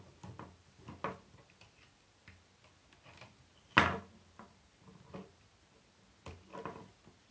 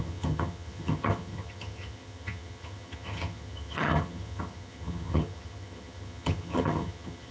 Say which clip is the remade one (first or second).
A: second